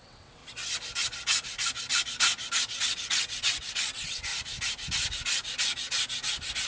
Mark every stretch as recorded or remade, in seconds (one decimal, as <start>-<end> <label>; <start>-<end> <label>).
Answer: 0.0-0.4 remade; 0.4-2.8 recorded; 2.8-4.3 remade; 4.3-6.7 recorded